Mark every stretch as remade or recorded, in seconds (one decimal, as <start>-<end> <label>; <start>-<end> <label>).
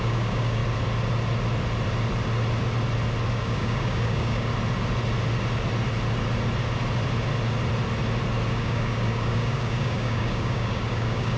0.0-0.6 remade; 0.6-3.3 recorded; 3.3-4.5 remade; 4.5-8.5 recorded; 8.5-11.4 remade